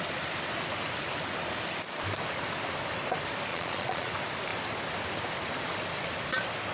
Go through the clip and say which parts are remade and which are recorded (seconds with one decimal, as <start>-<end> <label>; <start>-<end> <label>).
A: 0.0-3.5 recorded; 3.5-4.1 remade; 4.1-6.7 recorded